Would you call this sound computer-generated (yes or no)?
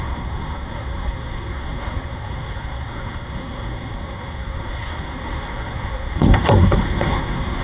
yes